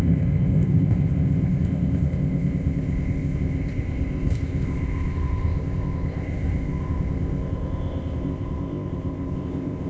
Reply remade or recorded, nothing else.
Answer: remade